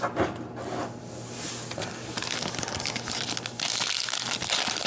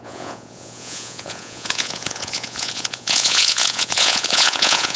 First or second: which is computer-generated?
second